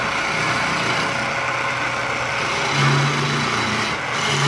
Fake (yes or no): no